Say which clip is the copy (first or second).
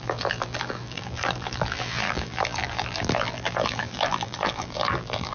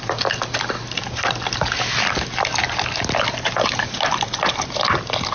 first